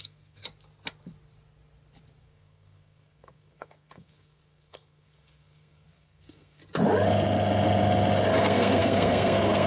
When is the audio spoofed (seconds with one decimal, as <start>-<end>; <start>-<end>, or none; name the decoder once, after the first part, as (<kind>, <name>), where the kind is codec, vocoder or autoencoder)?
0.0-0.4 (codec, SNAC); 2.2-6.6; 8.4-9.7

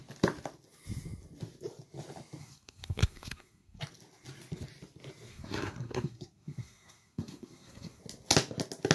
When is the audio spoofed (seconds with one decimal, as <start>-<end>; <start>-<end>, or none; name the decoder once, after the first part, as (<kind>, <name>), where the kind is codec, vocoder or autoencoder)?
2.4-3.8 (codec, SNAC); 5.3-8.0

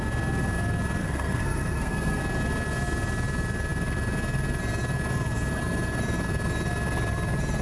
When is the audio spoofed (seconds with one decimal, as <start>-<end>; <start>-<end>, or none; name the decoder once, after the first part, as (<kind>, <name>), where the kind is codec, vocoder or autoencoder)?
1.0-2.2 (codec, SNAC)

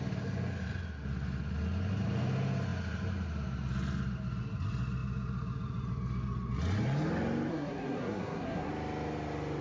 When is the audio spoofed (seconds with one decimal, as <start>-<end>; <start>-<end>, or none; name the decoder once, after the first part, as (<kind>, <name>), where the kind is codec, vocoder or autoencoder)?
7.5-8.7 (codec, SNAC)

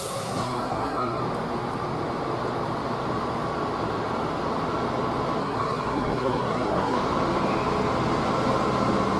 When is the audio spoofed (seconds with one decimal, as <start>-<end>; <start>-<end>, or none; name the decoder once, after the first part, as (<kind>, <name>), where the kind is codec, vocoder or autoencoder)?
0.0-1.2 (codec, SNAC); 5.4-7.0